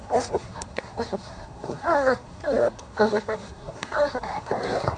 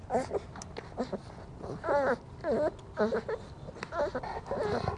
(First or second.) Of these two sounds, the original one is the second